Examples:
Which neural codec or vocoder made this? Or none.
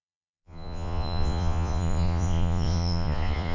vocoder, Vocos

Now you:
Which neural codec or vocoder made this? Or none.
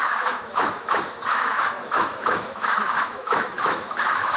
autoencoder, DAC-VAE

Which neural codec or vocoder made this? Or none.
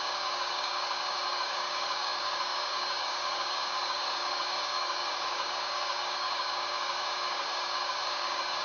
codec, DAC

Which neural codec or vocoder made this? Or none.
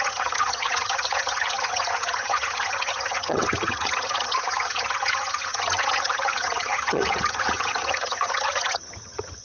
vocoder, HiFi-GAN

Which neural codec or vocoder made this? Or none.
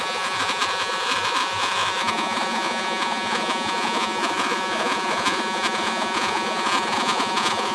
vocoder, Vocos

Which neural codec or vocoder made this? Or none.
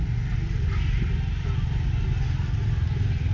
none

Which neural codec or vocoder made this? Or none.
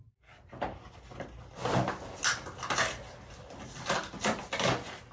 none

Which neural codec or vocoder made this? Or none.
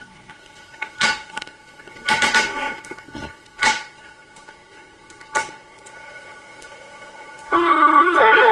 codec, SNAC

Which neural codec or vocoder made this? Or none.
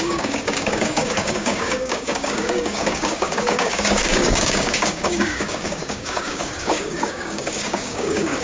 codec, DAC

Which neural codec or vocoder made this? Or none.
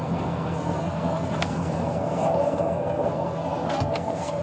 codec, SNAC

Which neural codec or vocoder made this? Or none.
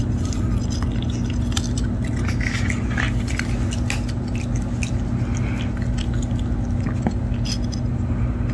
none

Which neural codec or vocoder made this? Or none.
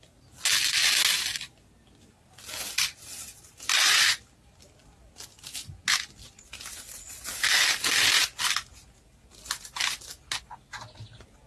none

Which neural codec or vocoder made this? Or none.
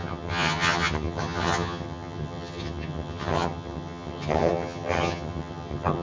vocoder, HiFi-GAN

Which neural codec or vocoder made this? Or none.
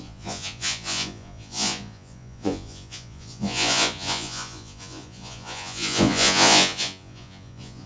vocoder, Vocos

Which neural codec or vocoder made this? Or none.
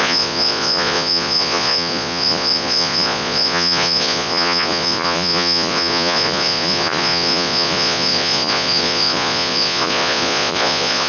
vocoder, Vocos